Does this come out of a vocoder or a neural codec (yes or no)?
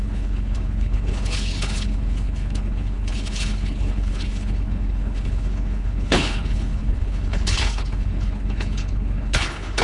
yes